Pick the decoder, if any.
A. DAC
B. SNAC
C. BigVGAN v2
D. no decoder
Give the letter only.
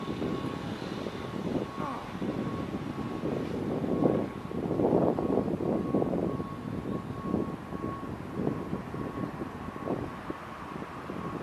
D